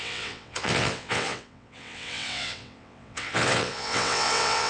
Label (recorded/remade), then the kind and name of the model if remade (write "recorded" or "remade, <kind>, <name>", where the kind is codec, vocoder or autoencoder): remade, vocoder, WaveNeXt